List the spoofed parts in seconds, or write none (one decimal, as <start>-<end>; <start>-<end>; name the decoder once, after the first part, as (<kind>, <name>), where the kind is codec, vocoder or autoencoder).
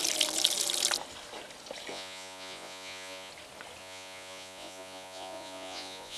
1.9-3.3 (vocoder, Vocos); 3.8-6.2